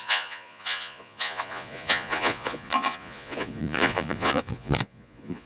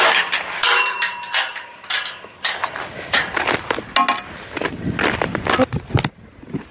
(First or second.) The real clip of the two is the second